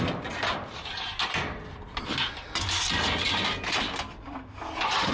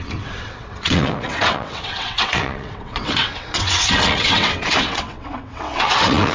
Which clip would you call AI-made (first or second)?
second